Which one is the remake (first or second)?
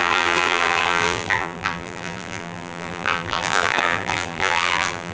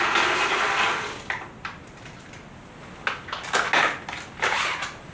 first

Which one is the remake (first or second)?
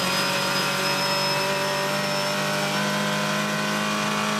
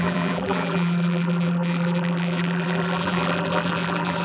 second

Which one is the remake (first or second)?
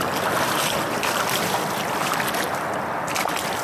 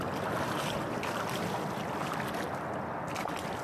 first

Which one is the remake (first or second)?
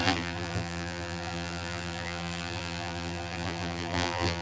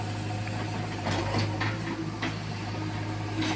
first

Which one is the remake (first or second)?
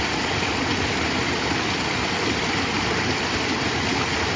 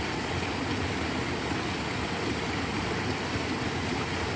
first